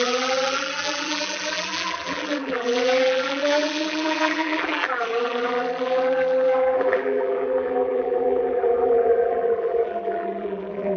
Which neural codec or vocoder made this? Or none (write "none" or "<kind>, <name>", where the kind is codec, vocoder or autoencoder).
vocoder, BigVGAN v2